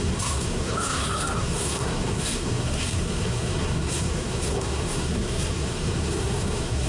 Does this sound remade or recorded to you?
remade